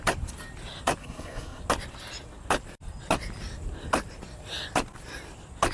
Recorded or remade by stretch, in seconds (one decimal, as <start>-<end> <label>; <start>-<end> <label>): 0.0-1.0 recorded; 1.0-1.6 remade; 1.6-5.7 recorded